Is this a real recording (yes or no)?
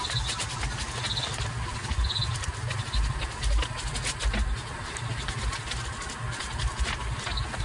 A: yes